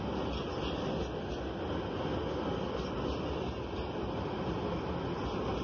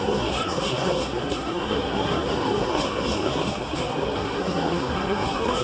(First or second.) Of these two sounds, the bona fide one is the first